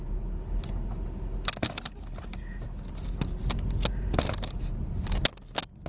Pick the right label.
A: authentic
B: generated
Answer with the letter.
A